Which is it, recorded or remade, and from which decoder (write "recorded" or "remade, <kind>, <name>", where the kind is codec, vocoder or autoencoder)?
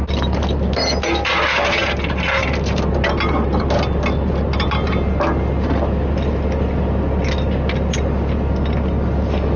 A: recorded